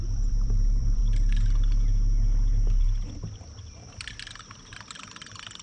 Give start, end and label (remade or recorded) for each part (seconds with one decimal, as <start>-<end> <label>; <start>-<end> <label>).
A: 0.0-1.0 remade; 1.0-4.4 recorded; 4.4-5.6 remade